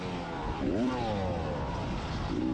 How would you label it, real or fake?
real